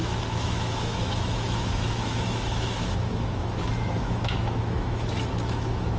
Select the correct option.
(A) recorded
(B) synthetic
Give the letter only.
B